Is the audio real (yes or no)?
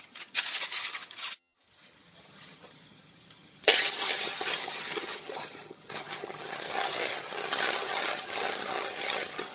no